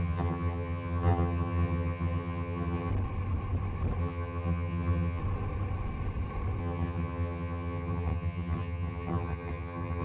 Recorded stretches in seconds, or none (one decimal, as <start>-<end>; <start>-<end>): 2.9-4.0; 5.2-6.6